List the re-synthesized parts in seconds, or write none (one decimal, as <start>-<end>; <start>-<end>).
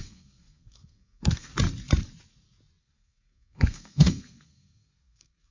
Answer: 0.0-1.5; 2.8-5.5